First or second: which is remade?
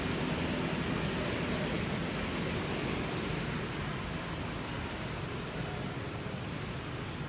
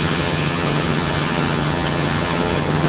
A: second